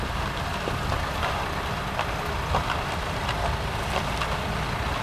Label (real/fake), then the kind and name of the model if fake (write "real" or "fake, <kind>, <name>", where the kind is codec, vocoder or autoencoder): real